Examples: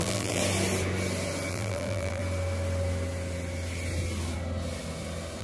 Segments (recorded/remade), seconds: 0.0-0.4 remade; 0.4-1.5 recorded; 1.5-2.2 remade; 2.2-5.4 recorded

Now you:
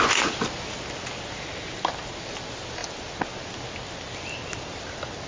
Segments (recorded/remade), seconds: 0.0-5.3 recorded

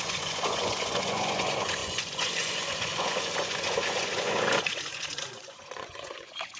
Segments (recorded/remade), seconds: 0.0-6.6 remade

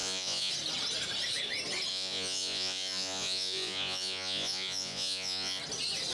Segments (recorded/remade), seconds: 0.0-0.5 remade; 0.5-1.9 recorded; 1.9-5.6 remade; 5.6-6.1 recorded

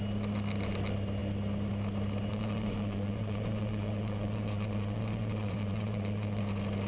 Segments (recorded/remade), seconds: 0.0-2.3 recorded; 2.3-6.4 remade; 6.4-6.9 recorded